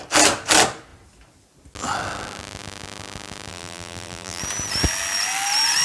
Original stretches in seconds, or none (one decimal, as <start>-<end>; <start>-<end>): 0.0-3.5; 4.4-5.8